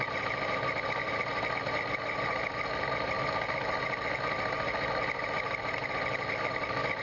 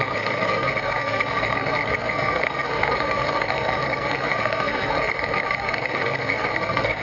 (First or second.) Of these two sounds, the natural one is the first